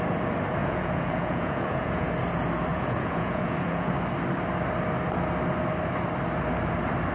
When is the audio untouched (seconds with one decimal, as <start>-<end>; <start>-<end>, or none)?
0.0-0.6; 2.1-2.7; 3.9-7.1